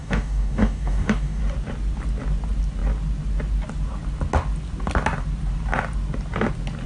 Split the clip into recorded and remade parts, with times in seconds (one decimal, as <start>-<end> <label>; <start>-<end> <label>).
0.0-1.4 remade; 1.4-6.9 recorded